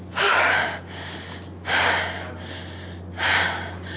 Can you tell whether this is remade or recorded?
recorded